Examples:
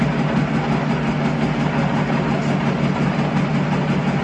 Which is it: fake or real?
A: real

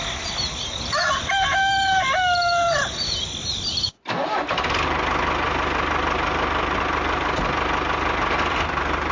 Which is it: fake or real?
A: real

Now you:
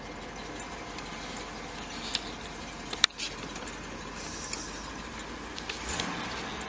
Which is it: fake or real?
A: real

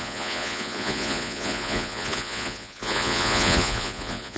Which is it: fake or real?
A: fake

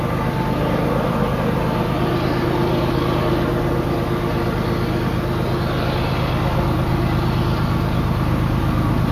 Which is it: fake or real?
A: real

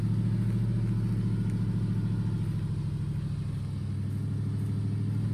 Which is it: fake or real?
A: real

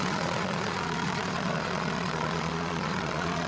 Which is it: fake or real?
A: fake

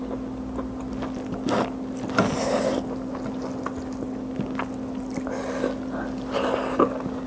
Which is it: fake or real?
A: real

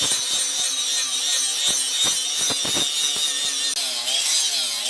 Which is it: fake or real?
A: real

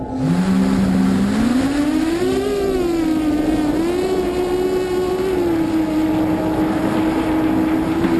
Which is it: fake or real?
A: real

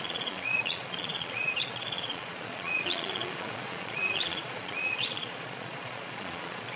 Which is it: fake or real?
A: fake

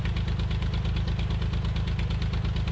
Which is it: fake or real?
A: real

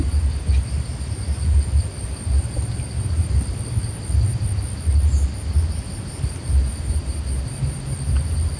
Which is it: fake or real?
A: real